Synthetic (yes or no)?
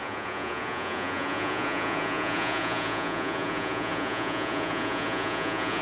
yes